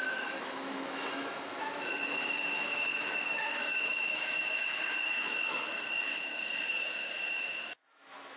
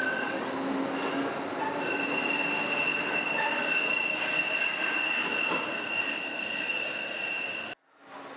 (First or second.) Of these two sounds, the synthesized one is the first